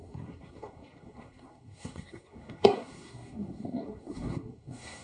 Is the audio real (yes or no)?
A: no